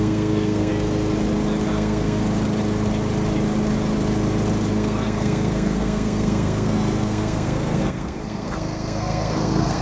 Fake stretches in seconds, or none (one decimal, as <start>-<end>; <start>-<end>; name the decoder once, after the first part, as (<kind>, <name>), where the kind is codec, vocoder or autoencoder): 0.0-0.7 (codec, SNAC); 1.7-2.2; 4.7-9.8